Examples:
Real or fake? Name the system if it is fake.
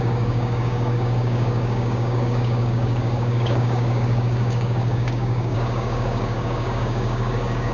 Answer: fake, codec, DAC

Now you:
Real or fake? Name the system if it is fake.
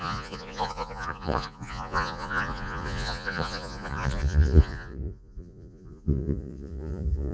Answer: fake, vocoder, Vocos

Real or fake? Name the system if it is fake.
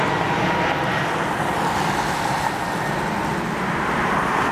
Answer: real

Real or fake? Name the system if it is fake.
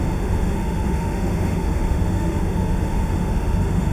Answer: fake, autoencoder, DAC-VAE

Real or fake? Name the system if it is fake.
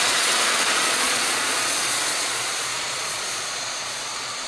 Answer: fake, vocoder, Vocos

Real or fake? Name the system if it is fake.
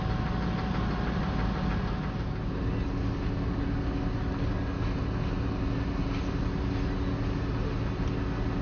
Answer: real